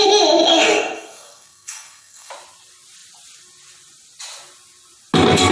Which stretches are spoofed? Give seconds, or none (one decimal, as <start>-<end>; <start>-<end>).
0.5-2.3